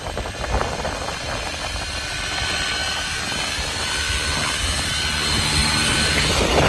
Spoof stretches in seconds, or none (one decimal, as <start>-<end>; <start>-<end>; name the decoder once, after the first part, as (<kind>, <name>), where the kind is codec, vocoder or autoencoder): none